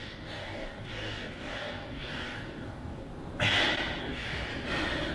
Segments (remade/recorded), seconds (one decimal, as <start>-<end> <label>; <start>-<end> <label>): 0.0-3.1 remade; 3.1-4.0 recorded; 4.0-4.5 remade; 4.5-5.1 recorded